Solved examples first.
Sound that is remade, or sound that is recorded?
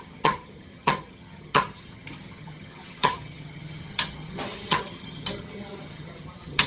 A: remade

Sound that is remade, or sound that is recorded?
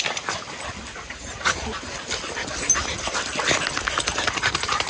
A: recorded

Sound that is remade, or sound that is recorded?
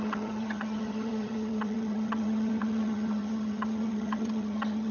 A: remade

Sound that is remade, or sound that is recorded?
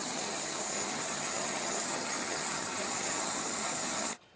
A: remade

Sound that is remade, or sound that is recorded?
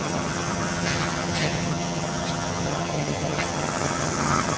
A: remade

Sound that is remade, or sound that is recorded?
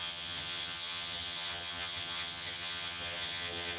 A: remade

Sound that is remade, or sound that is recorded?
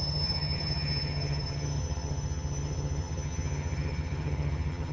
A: remade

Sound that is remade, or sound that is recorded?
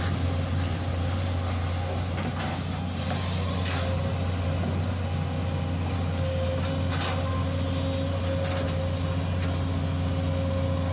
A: recorded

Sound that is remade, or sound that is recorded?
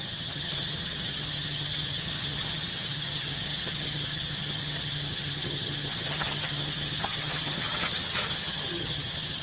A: remade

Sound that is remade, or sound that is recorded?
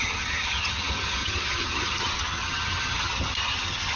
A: remade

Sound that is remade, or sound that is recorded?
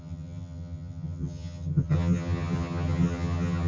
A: remade